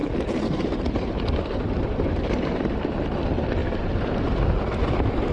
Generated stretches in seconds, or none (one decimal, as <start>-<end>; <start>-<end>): 0.0-3.2; 3.6-4.4